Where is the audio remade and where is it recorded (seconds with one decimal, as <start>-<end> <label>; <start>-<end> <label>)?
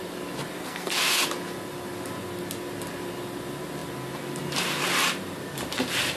0.0-0.6 recorded; 0.6-1.2 remade; 1.2-6.2 recorded